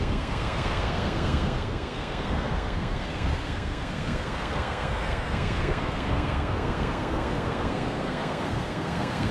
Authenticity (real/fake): fake